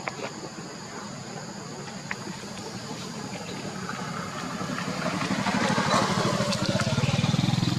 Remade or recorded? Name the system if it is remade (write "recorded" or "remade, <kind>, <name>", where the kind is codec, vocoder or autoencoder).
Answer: recorded